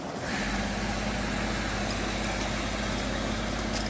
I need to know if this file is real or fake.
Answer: real